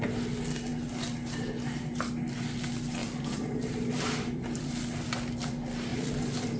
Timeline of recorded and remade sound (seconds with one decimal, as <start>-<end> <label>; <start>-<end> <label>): 0.0-3.0 recorded; 3.0-4.8 remade; 4.8-5.9 recorded; 5.9-6.6 remade